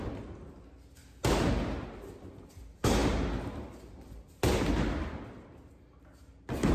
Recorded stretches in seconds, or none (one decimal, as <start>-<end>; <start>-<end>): 0.0-6.7